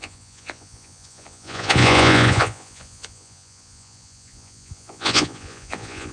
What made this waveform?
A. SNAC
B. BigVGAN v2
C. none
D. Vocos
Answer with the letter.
D